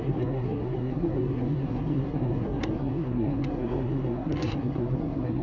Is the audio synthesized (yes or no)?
yes